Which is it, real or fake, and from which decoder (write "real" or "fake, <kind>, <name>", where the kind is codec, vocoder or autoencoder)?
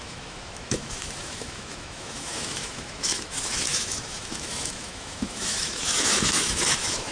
fake, autoencoder, DAC-VAE